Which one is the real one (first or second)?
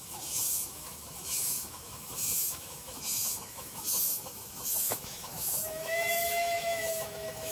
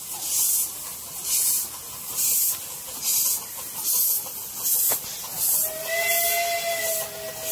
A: second